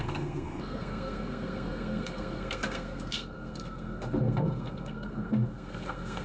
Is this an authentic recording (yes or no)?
no